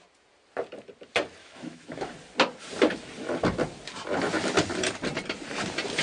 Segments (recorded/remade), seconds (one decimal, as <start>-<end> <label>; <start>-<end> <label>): 0.0-1.4 recorded; 1.4-2.1 remade; 2.1-6.0 recorded